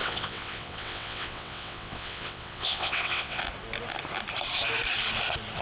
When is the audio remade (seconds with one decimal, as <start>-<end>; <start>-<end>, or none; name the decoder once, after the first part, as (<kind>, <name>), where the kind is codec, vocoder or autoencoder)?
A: 0.0-3.4 (vocoder, WaveNeXt)